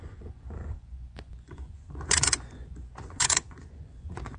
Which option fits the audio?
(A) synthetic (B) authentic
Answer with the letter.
A